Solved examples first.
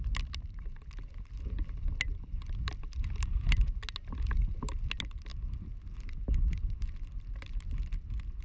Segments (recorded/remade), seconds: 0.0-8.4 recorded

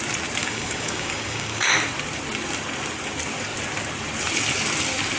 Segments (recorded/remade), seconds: 0.0-0.4 recorded; 0.4-1.7 remade; 1.7-5.2 recorded

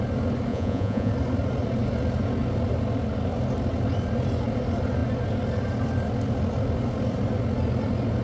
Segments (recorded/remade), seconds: 0.0-0.5 recorded; 0.5-1.1 remade; 1.1-8.2 recorded